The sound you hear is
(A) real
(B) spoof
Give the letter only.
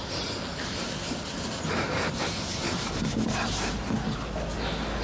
A